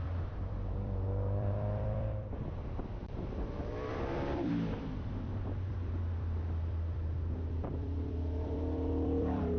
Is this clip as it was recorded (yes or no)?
no